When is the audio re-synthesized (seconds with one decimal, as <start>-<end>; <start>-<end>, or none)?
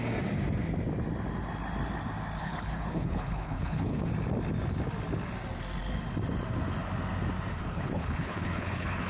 2.4-4.1; 7.5-9.1